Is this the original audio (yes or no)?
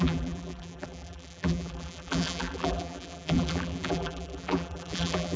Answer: no